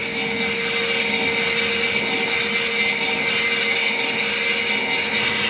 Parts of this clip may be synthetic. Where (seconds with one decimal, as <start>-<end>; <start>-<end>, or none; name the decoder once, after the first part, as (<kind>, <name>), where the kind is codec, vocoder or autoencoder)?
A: none